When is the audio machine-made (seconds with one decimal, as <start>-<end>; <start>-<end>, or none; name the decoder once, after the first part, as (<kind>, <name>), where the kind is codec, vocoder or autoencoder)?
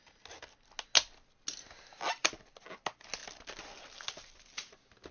none